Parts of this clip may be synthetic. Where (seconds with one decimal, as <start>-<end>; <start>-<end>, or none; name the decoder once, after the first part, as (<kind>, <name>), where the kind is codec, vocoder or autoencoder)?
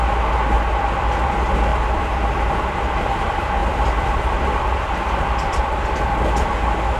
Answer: 1.7-2.9 (vocoder, BigVGAN v2); 3.6-5.6